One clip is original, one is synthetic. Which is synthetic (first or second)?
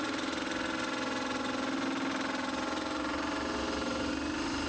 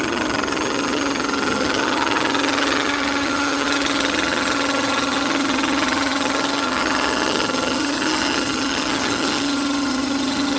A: second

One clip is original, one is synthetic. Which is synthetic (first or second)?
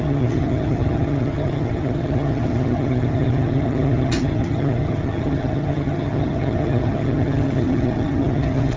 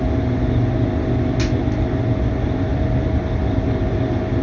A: first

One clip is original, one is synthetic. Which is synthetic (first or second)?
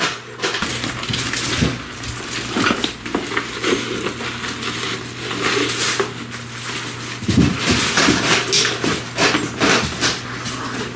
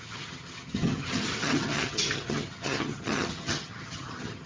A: second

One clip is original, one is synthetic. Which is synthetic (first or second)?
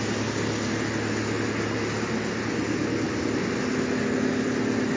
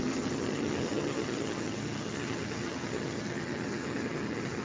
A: second